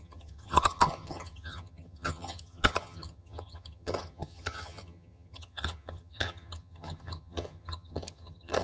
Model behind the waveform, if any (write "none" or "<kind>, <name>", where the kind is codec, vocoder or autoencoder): vocoder, HiFi-GAN